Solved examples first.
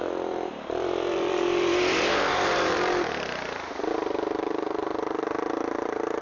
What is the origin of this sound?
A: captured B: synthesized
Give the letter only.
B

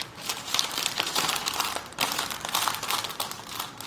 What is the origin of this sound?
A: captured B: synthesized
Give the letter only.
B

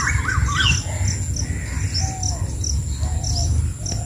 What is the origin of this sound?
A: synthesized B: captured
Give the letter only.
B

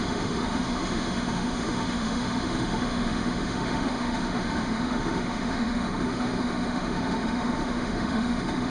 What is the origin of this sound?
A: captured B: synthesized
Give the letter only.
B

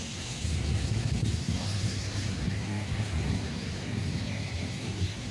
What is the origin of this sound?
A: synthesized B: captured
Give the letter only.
A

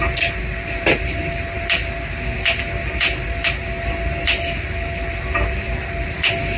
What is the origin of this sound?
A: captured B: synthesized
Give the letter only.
A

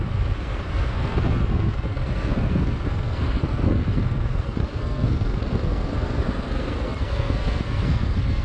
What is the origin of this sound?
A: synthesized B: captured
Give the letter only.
A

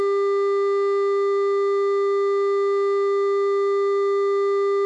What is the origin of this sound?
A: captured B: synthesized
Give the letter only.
A